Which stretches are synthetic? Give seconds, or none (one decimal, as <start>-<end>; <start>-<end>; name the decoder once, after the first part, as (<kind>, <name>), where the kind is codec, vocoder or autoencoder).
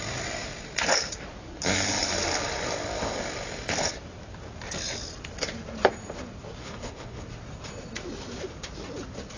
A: 6.6-7.2 (codec, HILCodec)